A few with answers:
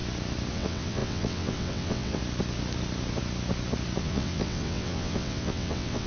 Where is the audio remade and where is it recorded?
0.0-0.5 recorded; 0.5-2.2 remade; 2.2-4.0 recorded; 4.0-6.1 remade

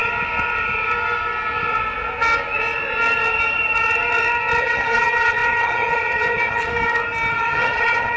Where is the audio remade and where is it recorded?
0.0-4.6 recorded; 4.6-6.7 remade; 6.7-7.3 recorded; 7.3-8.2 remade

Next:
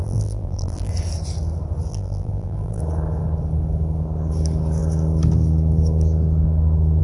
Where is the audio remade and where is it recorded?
0.0-0.9 remade; 0.9-1.9 recorded; 1.9-2.8 remade; 2.8-7.0 recorded

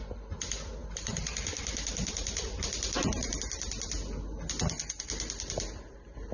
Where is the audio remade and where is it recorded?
0.0-0.8 recorded; 0.8-3.4 remade; 3.4-4.8 recorded; 4.8-6.3 remade

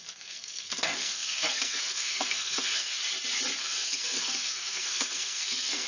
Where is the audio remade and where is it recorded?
0.0-3.0 remade; 3.0-3.6 recorded; 3.6-5.9 remade

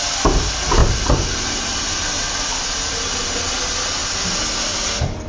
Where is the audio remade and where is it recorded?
0.0-0.8 recorded; 0.8-3.4 remade; 3.4-5.3 recorded